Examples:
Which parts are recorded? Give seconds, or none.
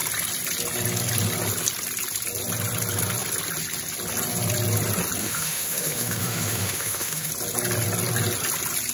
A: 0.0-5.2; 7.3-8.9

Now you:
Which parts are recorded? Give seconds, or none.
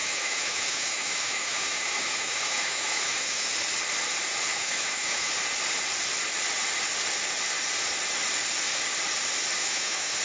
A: 3.5-4.5; 5.3-9.6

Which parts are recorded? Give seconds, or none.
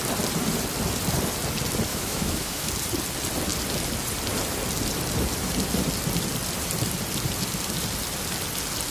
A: 0.0-1.9; 2.7-8.9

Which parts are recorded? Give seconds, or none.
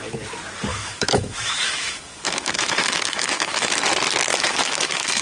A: 0.0-0.7; 3.8-4.3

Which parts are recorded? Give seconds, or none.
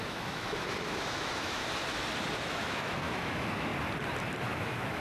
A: 1.6-2.4; 3.7-4.4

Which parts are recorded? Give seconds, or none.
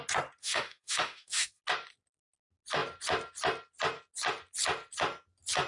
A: 0.0-0.4; 1.6-5.7